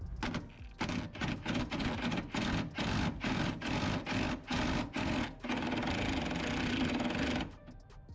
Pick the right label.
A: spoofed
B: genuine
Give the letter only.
B